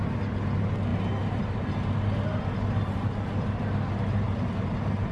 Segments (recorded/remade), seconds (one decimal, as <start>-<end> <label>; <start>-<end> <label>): 0.0-5.1 recorded